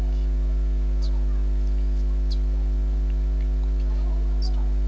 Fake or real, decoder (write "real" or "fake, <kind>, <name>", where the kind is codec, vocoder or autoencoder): real